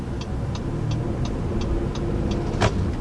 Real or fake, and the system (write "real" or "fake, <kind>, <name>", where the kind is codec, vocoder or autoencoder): real